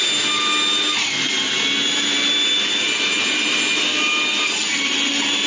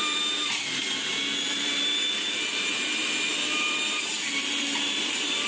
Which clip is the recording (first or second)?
first